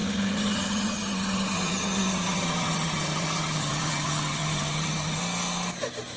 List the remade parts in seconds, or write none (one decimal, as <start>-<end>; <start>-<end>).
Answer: 0.0-5.2